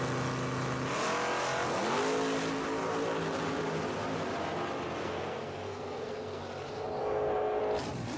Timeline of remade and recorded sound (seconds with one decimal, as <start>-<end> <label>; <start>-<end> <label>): 0.0-5.0 recorded; 5.0-6.4 remade; 6.4-7.0 recorded; 7.0-7.6 remade; 7.6-8.2 recorded